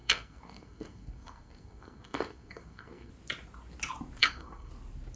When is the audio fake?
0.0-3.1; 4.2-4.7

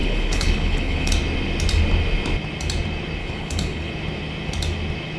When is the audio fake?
0.0-1.1; 3.2-3.9